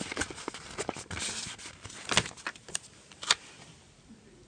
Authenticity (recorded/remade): recorded